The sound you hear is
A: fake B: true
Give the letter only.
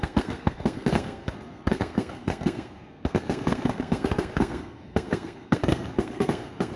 A